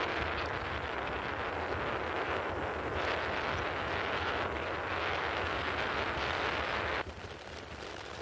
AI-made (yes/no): no